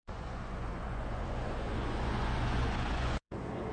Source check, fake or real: fake